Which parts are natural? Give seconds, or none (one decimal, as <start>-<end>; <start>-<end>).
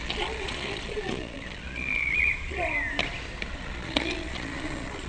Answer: 2.6-3.5